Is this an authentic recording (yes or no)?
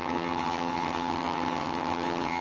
no